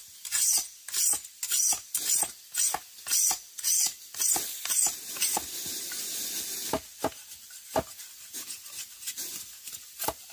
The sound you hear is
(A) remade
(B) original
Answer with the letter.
B